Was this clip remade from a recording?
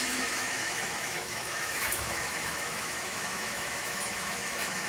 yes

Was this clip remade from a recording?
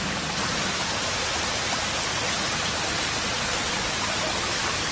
no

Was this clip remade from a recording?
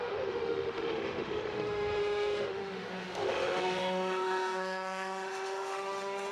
yes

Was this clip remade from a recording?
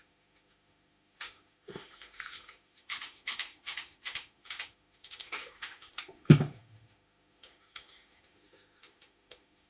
yes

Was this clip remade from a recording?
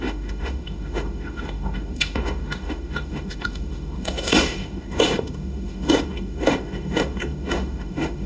yes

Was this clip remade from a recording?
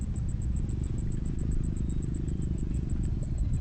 no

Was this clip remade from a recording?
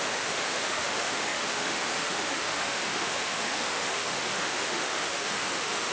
yes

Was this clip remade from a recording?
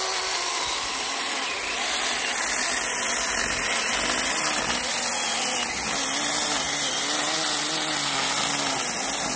no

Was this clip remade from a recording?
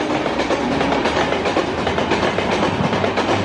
no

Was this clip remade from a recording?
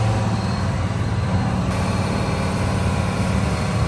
no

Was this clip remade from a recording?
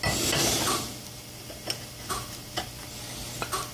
no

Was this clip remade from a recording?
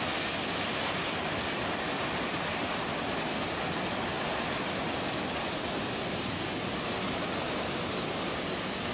no